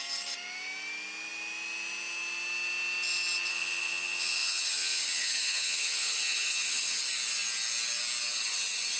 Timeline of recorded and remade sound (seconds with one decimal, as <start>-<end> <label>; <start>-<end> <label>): 0.0-3.5 recorded; 3.5-7.0 remade; 7.0-9.0 recorded